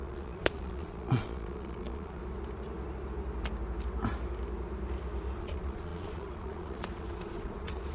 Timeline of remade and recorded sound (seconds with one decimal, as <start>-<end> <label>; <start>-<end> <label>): 0.0-2.2 remade; 2.2-5.4 recorded; 5.4-7.9 remade

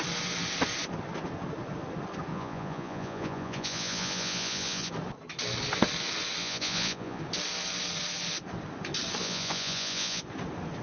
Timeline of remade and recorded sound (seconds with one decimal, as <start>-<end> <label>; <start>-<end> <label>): 0.0-2.3 recorded; 2.3-4.9 remade; 4.9-6.4 recorded; 6.4-7.2 remade; 7.2-9.2 recorded; 9.2-10.2 remade; 10.2-10.8 recorded

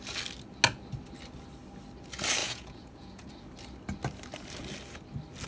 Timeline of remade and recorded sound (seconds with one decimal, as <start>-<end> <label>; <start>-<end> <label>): 0.0-2.4 recorded; 2.4-3.3 remade; 3.3-5.5 recorded

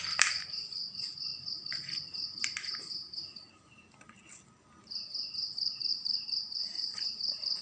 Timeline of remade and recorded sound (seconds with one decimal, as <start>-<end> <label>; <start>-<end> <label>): 0.0-7.6 recorded

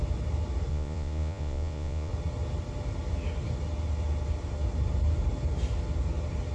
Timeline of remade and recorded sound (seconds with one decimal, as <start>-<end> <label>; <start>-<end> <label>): 0.0-0.7 recorded; 0.7-2.1 remade; 2.1-6.5 recorded